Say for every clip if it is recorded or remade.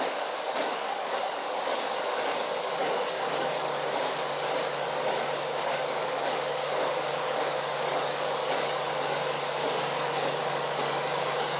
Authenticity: remade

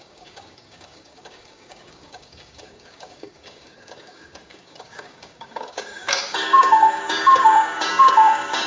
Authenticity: remade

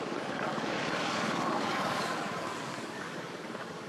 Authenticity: remade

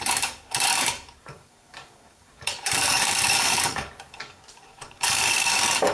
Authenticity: remade